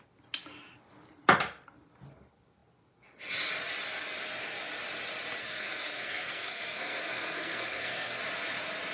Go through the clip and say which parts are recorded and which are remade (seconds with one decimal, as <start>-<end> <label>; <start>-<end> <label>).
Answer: 0.0-5.4 recorded; 5.4-8.2 remade; 8.2-8.9 recorded